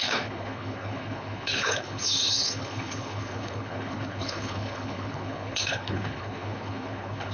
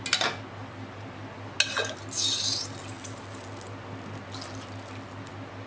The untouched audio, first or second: second